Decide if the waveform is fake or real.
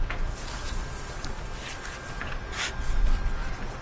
real